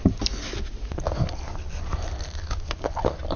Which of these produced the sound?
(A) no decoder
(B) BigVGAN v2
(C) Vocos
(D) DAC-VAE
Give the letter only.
A